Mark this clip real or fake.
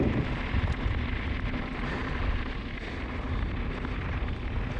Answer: real